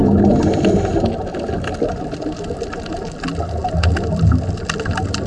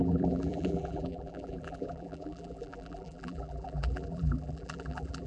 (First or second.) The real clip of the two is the first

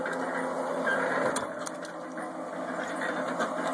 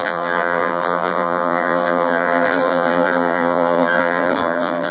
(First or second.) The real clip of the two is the first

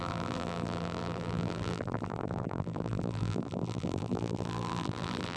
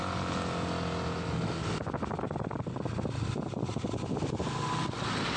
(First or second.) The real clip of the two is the second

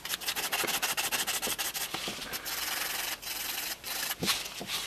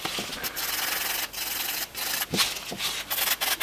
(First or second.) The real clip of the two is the second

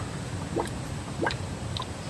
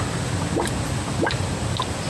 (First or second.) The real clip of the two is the second